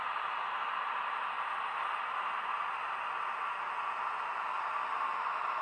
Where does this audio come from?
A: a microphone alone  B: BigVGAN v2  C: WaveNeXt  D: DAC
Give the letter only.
A